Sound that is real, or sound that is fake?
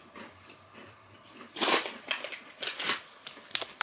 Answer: fake